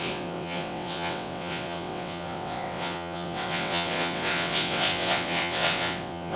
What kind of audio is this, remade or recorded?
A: remade